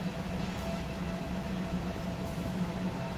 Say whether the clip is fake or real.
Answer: fake